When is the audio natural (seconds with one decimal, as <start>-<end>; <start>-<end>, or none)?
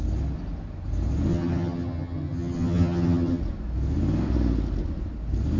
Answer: 0.0-1.3; 3.4-5.6